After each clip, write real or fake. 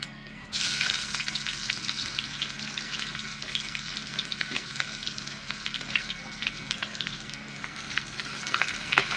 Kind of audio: fake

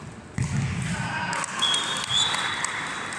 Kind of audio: real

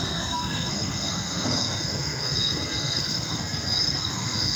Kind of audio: fake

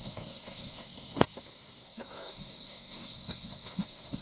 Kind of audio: fake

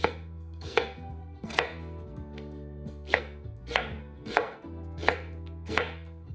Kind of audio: fake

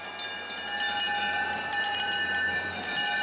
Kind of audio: real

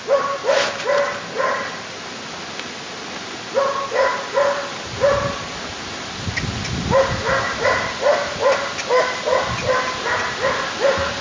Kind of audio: real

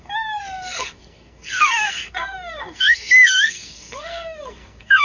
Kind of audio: fake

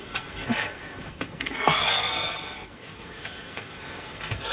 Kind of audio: fake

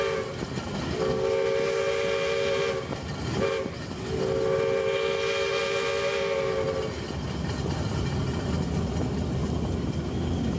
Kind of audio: real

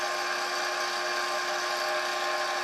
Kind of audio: real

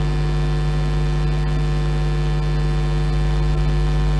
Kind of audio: real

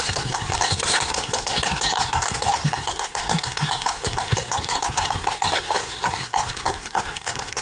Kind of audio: fake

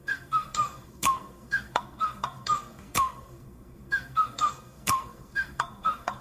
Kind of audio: fake